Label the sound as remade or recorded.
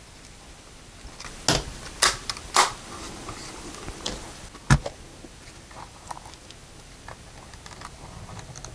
recorded